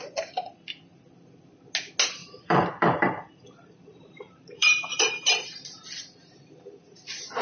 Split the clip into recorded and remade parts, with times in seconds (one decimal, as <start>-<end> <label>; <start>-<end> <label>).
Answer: 0.0-2.2 recorded; 2.2-3.4 remade; 3.4-3.9 recorded; 3.9-5.9 remade; 5.9-7.4 recorded